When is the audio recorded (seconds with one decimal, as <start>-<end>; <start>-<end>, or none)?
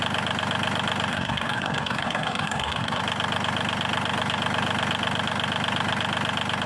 0.0-1.1; 3.0-6.7